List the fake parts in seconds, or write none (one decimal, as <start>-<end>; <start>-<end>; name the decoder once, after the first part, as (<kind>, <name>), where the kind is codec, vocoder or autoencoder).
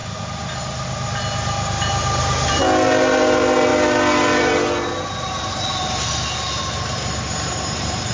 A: none